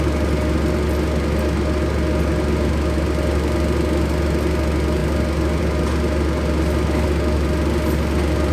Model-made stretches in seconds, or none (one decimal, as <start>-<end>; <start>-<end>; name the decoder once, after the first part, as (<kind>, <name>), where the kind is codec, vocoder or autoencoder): none